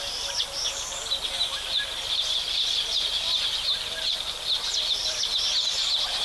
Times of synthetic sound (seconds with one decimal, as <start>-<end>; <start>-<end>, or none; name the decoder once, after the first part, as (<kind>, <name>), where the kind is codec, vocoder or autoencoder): 1.5-5.2 (vocoder, BigVGAN v2)